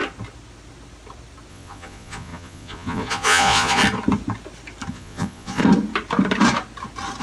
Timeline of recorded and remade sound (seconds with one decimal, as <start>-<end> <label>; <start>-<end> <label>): 0.0-1.5 recorded; 1.5-3.8 remade; 3.8-4.9 recorded; 4.9-5.6 remade; 5.6-7.2 recorded